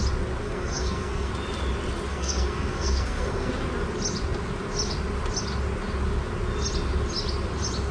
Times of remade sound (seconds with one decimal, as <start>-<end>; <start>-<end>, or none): 0.4-1.3; 2.1-3.5